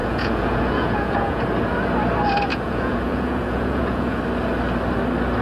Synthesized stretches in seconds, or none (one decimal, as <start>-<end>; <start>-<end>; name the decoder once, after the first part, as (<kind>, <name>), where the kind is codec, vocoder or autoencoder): 0.0-1.4 (vocoder, Vocos); 2.5-4.2